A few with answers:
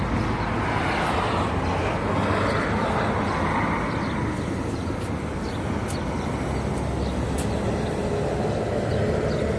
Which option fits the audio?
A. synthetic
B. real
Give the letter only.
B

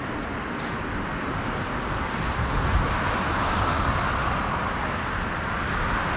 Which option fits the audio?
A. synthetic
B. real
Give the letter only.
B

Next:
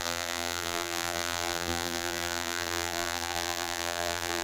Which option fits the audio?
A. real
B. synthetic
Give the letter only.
B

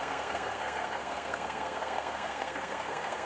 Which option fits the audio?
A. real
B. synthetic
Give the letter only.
B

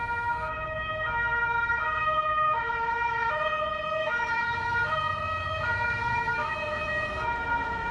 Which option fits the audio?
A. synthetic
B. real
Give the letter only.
A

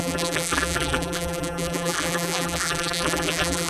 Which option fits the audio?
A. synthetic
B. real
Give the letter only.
A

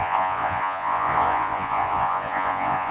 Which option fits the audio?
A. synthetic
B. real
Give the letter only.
A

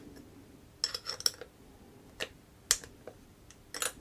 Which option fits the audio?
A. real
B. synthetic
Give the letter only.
A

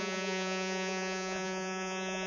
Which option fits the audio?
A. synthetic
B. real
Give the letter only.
A